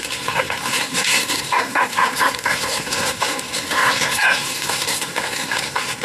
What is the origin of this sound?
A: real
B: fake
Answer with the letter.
B